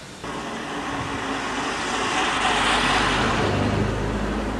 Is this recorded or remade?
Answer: recorded